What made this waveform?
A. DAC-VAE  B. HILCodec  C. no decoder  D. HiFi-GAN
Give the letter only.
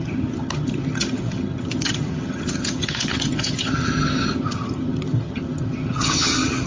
D